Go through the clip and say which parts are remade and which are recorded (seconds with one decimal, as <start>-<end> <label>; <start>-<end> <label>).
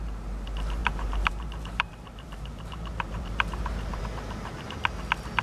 0.0-0.8 recorded; 0.8-4.0 remade; 4.0-5.4 recorded